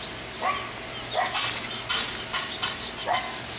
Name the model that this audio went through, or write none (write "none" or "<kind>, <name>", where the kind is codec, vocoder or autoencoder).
none